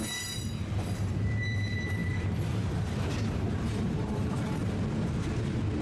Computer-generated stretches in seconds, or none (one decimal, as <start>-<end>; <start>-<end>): 0.0-4.6